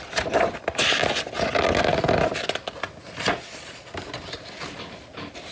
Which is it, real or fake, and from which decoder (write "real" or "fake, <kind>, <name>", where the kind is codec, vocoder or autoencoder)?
real